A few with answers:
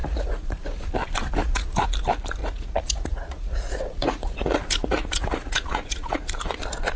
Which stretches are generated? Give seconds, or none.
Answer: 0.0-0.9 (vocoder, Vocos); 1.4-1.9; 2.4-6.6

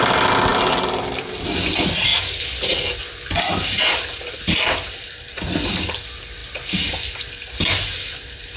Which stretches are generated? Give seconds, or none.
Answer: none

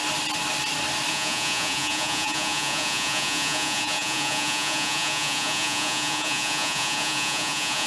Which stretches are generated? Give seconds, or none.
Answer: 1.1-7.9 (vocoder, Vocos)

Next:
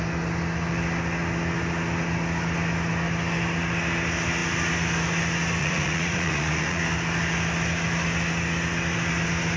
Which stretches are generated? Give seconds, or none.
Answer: 5.6-6.8 (vocoder, Vocos)

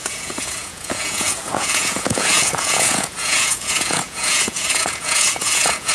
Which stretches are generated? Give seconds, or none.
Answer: 0.0-5.9 (vocoder, Vocos)

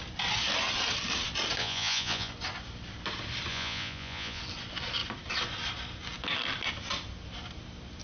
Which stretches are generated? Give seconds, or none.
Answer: 1.6-2.3 (vocoder, Vocos); 3.5-4.4

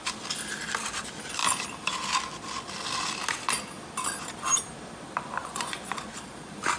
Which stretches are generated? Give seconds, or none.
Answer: 5.4-6.2 (vocoder, Vocos)